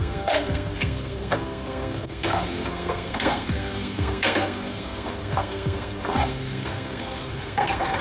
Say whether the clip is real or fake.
fake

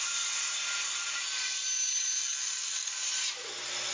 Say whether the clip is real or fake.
real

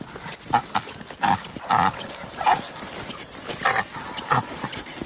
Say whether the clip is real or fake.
real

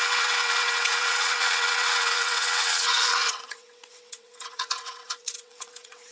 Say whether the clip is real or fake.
fake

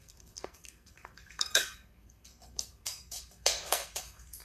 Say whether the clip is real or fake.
fake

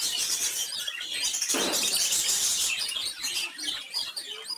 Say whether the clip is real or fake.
real